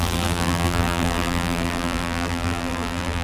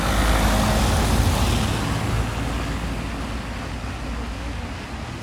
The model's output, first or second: first